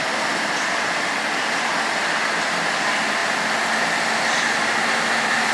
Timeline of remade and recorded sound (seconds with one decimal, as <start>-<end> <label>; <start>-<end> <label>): 0.0-5.5 recorded